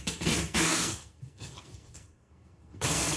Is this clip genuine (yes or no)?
no